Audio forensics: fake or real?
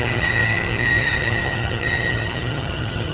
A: fake